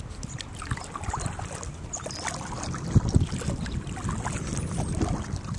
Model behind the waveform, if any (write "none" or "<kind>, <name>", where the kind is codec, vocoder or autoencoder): none